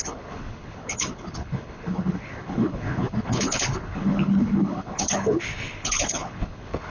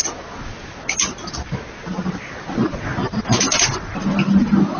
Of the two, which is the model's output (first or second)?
first